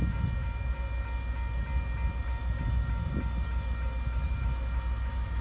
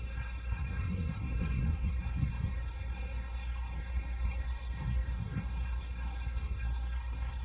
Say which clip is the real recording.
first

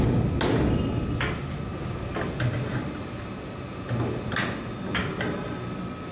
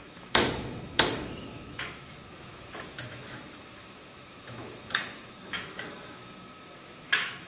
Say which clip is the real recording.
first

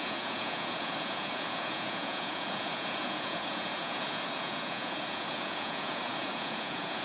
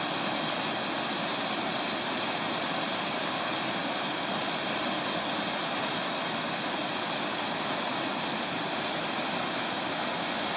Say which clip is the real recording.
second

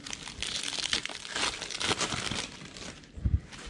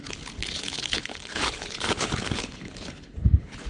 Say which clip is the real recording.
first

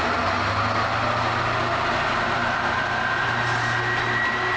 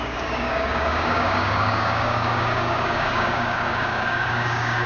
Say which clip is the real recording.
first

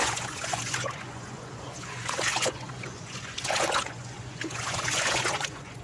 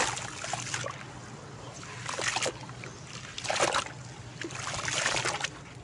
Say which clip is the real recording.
second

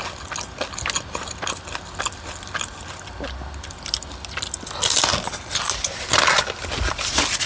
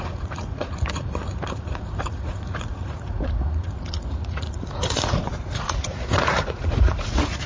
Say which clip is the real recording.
first